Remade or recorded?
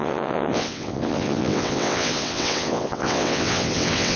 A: remade